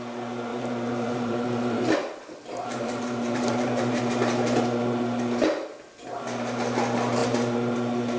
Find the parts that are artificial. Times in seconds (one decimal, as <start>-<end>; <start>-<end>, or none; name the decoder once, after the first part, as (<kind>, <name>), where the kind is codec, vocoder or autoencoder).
0.5-4.0 (vocoder, BigVGAN v2)